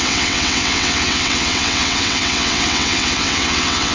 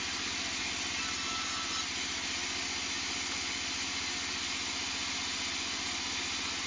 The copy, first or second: first